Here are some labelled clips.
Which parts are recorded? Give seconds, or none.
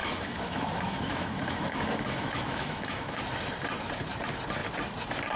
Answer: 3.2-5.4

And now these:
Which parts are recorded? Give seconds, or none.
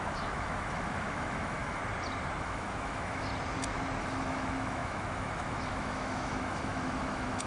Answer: 1.8-2.4; 3.3-4.0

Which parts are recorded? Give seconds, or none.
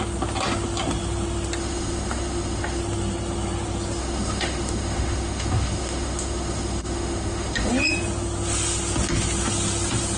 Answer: 0.0-1.6; 2.8-4.0; 7.7-10.2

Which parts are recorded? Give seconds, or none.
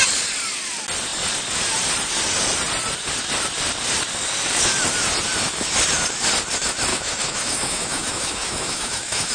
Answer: 0.0-6.9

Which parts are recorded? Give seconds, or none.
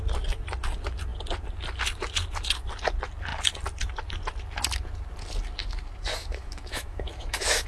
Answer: 0.0-6.2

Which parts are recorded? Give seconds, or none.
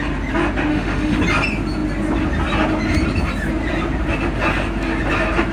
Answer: 0.0-0.7; 1.2-5.5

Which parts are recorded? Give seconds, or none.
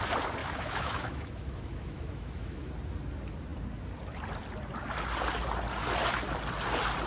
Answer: 0.0-0.4; 2.7-7.1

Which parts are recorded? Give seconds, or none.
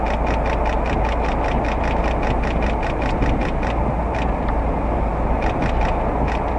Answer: 0.0-6.6